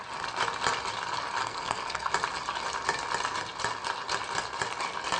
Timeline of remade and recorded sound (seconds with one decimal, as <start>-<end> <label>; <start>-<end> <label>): 0.0-1.4 recorded; 1.4-2.1 remade; 2.1-5.2 recorded